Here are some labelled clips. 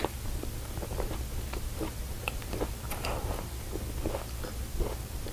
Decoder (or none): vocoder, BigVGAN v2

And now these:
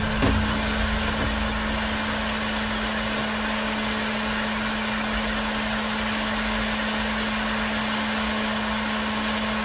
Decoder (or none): none